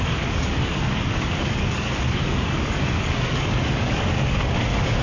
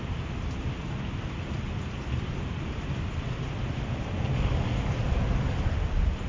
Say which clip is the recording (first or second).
second